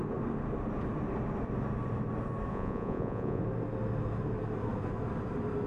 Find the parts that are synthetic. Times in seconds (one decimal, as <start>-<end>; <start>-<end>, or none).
2.5-3.4